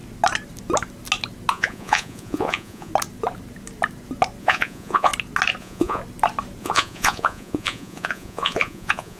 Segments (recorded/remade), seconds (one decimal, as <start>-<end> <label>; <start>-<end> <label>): 0.0-1.5 recorded; 1.5-2.9 remade; 2.9-4.4 recorded; 4.4-5.1 remade; 5.1-5.6 recorded; 5.6-6.0 remade; 6.0-6.6 recorded; 6.6-9.2 remade